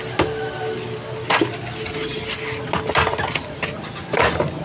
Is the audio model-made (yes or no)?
no